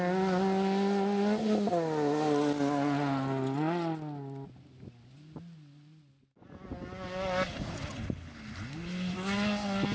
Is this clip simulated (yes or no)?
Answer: no